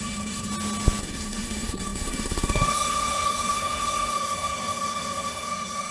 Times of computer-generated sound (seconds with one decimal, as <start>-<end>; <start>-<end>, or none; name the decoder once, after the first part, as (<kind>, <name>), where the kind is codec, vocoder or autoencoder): 0.0-0.5 (codec, SNAC); 1.0-5.9